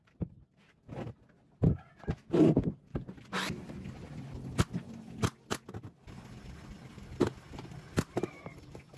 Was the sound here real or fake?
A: real